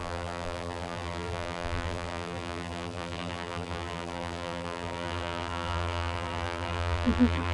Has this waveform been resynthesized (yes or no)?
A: yes